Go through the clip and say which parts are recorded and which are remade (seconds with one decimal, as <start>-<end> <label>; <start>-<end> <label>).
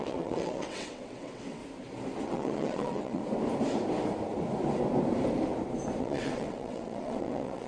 0.0-1.6 remade; 1.6-2.2 recorded; 2.2-3.2 remade; 3.2-6.0 recorded; 6.0-7.7 remade